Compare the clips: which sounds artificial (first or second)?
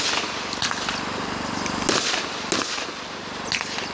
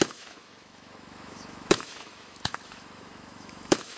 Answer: second